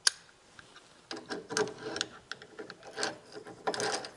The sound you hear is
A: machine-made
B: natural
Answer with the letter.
B